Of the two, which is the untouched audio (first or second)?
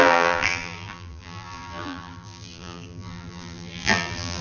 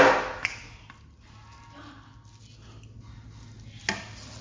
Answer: second